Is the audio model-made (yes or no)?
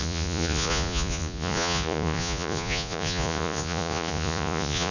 yes